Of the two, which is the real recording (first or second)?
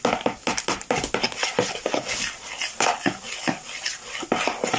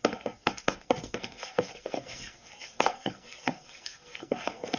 first